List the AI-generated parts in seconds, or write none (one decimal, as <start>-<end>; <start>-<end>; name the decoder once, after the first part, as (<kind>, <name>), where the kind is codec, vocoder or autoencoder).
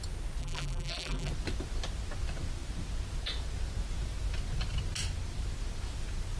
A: 0.4-1.3 (vocoder, BigVGAN v2)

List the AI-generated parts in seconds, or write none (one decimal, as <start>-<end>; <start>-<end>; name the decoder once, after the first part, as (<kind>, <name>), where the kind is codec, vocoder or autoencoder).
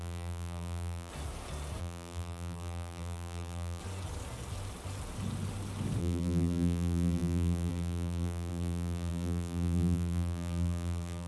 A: 0.0-1.1 (vocoder, BigVGAN v2); 1.8-3.8; 6.0-11.3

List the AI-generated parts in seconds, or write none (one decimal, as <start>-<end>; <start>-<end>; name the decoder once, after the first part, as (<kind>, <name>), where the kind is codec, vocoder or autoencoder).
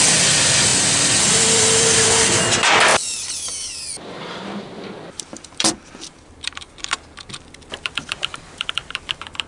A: 0.0-0.7 (vocoder, BigVGAN v2); 1.3-9.5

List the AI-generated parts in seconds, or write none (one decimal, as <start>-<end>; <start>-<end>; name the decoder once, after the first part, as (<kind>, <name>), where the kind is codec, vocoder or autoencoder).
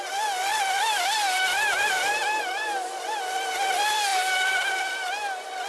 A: 0.5-3.2 (vocoder, BigVGAN v2); 4.1-4.8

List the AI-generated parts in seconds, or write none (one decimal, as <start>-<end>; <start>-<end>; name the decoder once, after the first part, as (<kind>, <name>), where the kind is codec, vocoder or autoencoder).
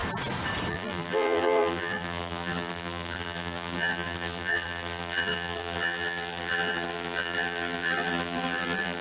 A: 0.7-9.0 (vocoder, BigVGAN v2)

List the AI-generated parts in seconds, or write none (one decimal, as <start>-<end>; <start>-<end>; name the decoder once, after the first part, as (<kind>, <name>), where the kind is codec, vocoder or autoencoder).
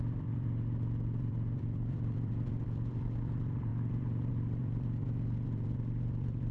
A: 0.0-6.5 (vocoder, BigVGAN v2)